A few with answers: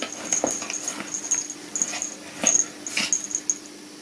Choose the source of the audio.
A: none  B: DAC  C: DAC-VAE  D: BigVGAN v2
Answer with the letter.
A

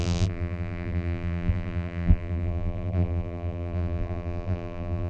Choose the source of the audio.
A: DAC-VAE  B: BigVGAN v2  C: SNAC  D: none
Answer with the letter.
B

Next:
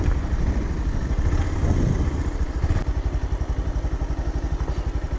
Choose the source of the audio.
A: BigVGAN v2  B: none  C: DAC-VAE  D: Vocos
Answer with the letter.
A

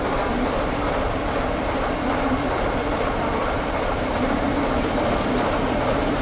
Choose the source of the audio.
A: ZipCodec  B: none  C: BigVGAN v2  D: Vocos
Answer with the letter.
C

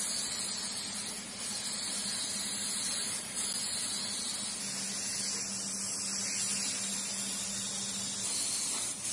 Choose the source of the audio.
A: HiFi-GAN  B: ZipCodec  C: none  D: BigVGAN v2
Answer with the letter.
C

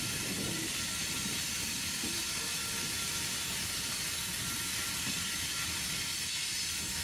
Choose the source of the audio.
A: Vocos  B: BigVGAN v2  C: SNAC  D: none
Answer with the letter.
D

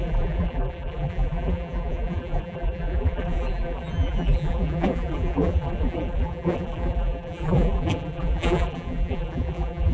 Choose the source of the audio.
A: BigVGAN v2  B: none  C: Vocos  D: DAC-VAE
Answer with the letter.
A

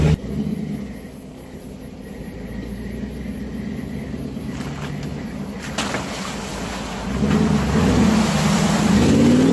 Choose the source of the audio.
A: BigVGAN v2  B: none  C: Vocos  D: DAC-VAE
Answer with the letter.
B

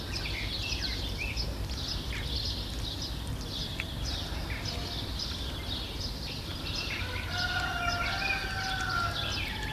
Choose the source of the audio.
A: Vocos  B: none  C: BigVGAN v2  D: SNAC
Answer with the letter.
B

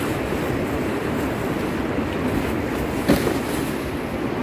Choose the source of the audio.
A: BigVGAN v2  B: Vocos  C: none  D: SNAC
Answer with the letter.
C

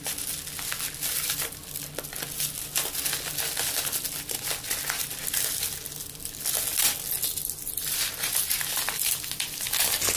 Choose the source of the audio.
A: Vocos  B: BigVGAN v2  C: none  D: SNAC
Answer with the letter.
C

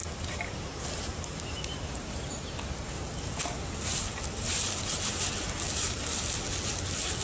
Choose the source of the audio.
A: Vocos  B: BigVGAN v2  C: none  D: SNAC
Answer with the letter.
C